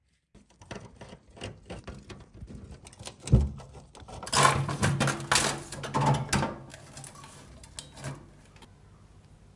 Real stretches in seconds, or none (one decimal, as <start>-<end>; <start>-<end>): 0.0-9.6